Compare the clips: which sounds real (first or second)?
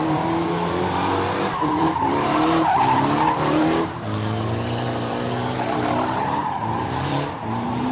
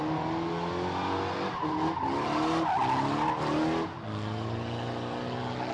second